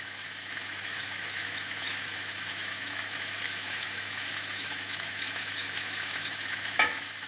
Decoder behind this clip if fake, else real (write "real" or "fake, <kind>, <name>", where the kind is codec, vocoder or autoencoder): fake, autoencoder, DAC-VAE